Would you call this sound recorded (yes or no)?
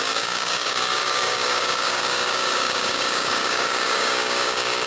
no